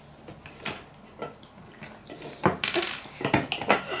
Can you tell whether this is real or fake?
real